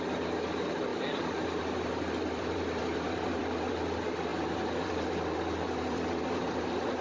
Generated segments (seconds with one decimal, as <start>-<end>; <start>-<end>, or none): 0.9-3.7; 4.3-6.6